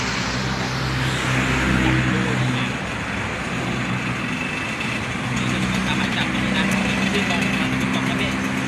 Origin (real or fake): real